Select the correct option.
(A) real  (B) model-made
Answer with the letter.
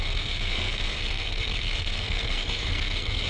B